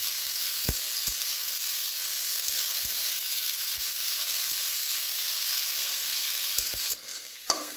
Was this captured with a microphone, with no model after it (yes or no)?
no